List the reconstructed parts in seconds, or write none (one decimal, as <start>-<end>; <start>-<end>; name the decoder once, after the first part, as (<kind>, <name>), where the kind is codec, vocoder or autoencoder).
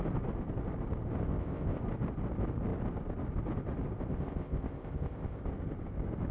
1.2-1.8 (codec, ZipCodec); 4.1-5.4